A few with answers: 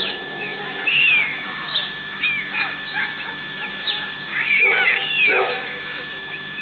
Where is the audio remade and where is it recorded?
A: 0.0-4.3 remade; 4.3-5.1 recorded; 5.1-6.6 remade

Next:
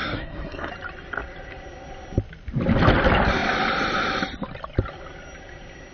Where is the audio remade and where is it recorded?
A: 0.0-0.7 remade; 0.7-5.9 recorded

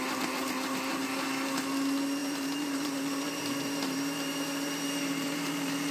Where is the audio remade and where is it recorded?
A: 0.0-2.2 recorded; 2.2-5.9 remade

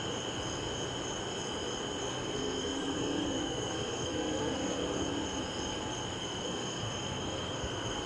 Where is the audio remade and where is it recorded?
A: 0.0-2.1 recorded; 2.1-4.8 remade; 4.8-6.2 recorded; 6.2-8.1 remade

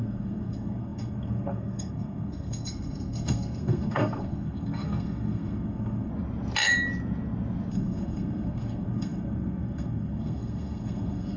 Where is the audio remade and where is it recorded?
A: 0.0-6.1 remade; 6.1-7.7 recorded; 7.7-11.4 remade

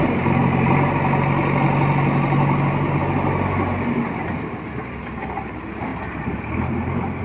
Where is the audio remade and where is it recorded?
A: 0.0-7.2 recorded

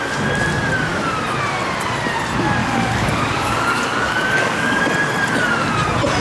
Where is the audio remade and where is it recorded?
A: 0.0-2.6 recorded; 2.6-4.8 remade; 4.8-6.2 recorded

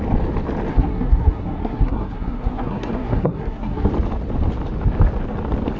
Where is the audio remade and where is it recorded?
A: 0.0-0.7 recorded; 0.7-3.9 remade; 3.9-5.8 recorded